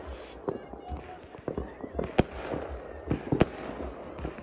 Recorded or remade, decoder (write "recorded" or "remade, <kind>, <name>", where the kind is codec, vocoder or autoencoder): recorded